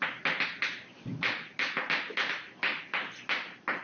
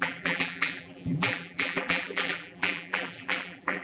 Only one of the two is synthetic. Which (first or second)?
second